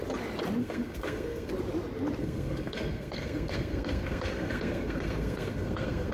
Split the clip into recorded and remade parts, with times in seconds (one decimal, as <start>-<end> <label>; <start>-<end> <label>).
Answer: 0.0-0.6 recorded; 0.6-1.5 remade; 1.5-2.2 recorded; 2.2-6.1 remade